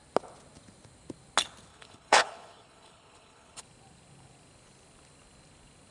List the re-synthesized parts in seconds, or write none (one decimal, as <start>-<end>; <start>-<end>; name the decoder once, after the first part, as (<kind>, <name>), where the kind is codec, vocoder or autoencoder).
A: 1.7-3.6 (codec, HILCodec)